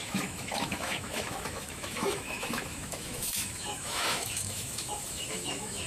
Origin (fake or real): fake